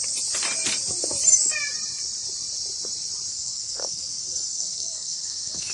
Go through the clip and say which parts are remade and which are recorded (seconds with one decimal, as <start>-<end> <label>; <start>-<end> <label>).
0.0-3.3 recorded; 3.3-5.7 remade